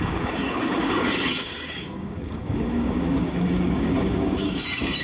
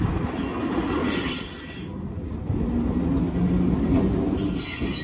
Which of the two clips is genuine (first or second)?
second